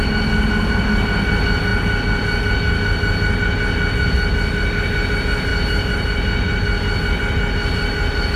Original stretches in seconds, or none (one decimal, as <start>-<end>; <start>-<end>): 0.0-8.4